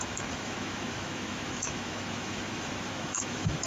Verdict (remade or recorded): remade